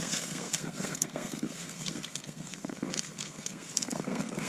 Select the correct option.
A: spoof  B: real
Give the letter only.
A